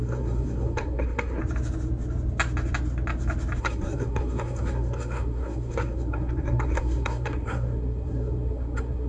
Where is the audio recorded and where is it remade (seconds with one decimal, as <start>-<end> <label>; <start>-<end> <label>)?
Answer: 0.0-1.4 remade; 1.4-3.6 recorded; 3.6-9.1 remade